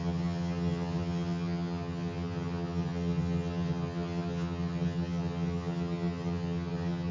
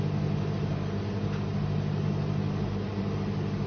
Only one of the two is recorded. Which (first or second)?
second